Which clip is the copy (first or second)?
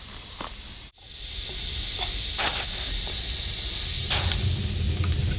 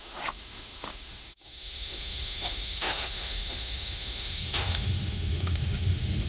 second